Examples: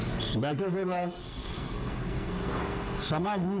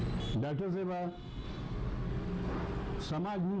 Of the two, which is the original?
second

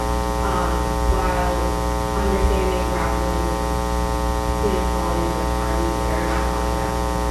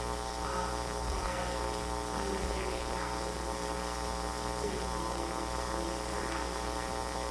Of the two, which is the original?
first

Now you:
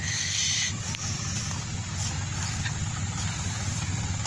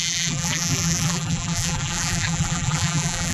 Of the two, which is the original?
first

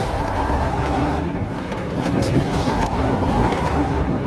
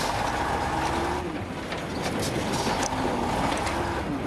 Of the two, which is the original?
second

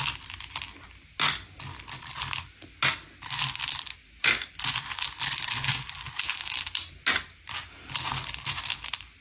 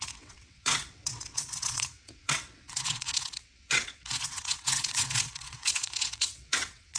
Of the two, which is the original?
first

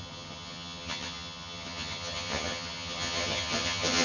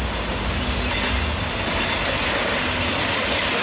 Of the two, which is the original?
second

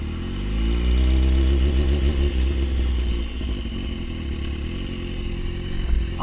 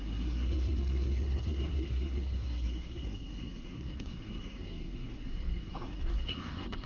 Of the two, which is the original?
first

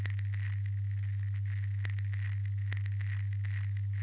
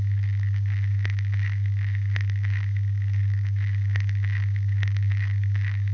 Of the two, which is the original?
first